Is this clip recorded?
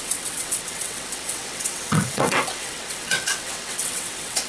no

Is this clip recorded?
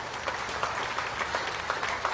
yes